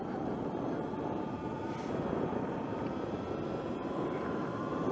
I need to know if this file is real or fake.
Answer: real